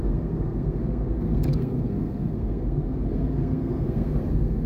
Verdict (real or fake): fake